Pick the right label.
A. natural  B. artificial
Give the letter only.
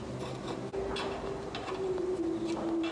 A